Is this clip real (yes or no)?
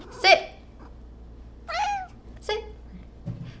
yes